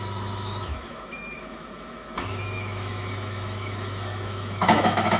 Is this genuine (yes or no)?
no